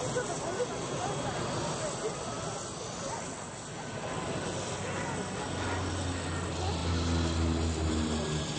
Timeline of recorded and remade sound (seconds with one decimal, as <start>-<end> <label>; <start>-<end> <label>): 0.0-8.6 recorded